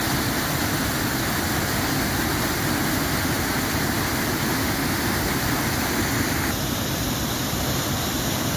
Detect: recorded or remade recorded